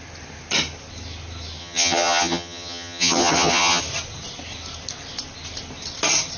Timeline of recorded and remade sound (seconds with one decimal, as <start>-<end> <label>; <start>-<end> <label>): 0.0-1.6 recorded; 1.6-3.8 remade; 3.8-6.4 recorded